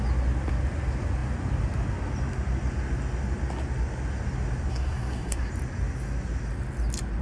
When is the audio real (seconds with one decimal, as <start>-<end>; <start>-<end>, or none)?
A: 0.0-4.7; 5.5-7.2